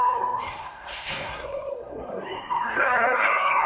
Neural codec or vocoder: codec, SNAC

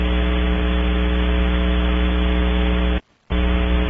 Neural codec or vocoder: none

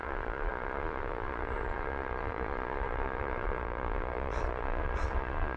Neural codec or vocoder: vocoder, Vocos